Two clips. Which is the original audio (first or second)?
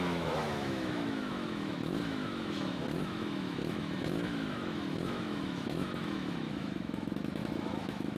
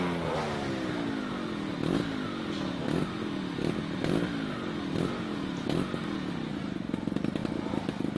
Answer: second